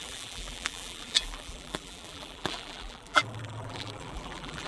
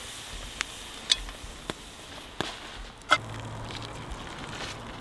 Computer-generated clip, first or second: first